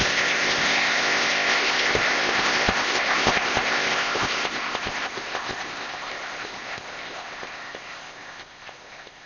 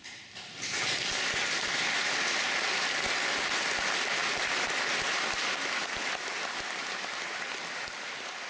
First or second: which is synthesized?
first